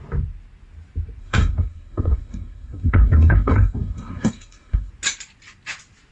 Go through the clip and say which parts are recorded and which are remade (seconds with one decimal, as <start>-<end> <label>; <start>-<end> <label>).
0.0-1.2 recorded; 1.2-4.9 remade; 4.9-6.1 recorded